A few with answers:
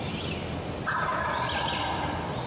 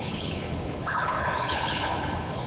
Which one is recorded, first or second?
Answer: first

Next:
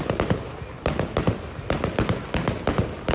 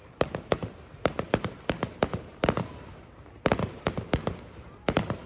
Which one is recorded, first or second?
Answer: first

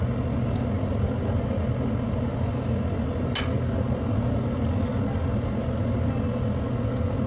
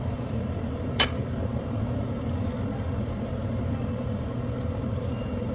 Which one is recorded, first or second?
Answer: first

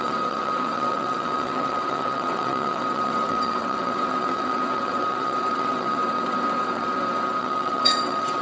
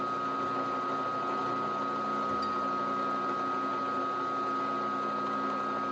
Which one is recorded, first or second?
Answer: second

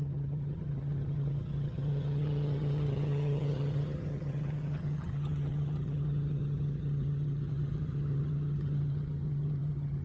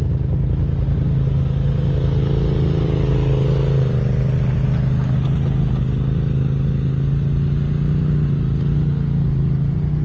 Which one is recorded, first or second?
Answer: second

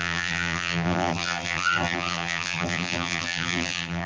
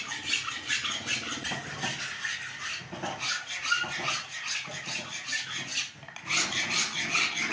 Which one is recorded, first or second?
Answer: second